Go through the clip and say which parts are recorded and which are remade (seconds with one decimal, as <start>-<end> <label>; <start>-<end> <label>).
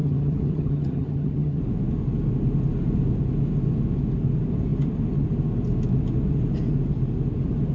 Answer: 0.0-1.6 remade; 1.6-7.7 recorded